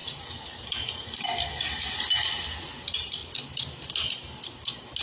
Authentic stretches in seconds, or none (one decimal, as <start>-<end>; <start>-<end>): 0.0-5.0

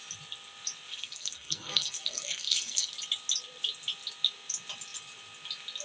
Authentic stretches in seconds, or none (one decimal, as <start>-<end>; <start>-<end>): 0.0-0.9; 2.9-5.8

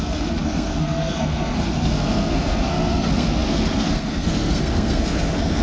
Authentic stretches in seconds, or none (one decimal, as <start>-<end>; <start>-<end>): none

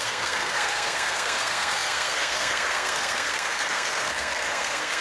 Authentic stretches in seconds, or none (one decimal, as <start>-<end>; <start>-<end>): none

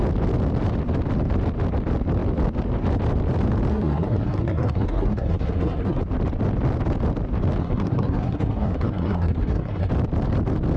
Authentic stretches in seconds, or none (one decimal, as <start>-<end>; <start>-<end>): 0.0-3.7; 6.0-7.6; 9.9-10.8

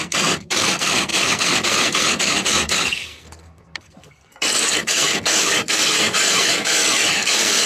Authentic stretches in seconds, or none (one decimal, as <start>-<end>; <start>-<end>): none

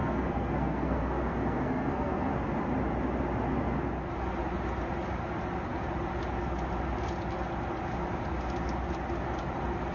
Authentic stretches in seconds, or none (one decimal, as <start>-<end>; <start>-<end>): 2.3-9.9

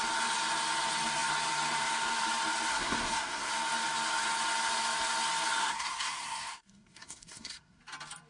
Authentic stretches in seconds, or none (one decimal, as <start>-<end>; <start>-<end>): 0.0-2.7; 3.5-5.6; 7.8-8.3